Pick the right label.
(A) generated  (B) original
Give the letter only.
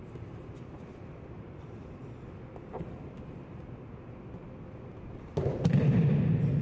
B